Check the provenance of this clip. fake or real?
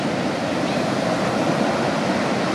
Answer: real